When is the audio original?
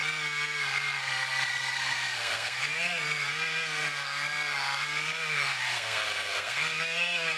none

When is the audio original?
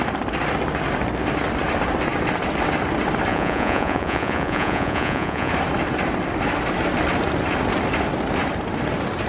0.0-3.3; 5.5-9.3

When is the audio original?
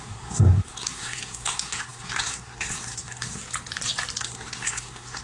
3.4-4.2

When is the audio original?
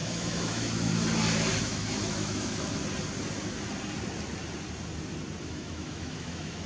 0.9-1.6; 2.8-5.4